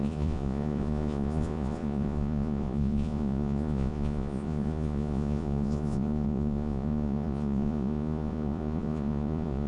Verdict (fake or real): fake